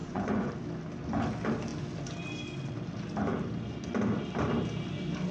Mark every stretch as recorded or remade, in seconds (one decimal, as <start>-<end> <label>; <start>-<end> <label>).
0.0-0.5 remade; 0.5-5.3 recorded